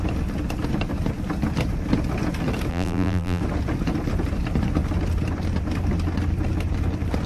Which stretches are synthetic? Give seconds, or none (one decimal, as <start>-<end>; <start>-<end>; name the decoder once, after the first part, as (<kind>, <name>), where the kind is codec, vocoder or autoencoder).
2.7-3.4 (vocoder, BigVGAN v2)